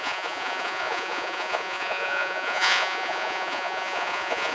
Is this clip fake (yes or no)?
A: yes